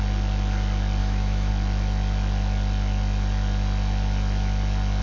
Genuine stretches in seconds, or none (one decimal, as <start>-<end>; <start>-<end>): 0.0-1.0; 1.5-5.0